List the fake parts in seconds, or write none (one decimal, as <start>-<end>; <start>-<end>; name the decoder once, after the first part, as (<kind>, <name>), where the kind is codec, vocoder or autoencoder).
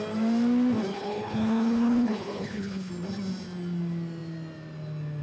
0.9-2.9 (codec, HILCodec)